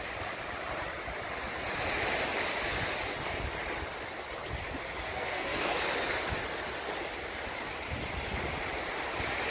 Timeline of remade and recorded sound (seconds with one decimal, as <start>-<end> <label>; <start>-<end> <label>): 0.0-5.1 recorded; 5.1-5.8 remade; 5.8-9.5 recorded